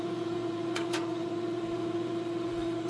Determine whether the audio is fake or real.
fake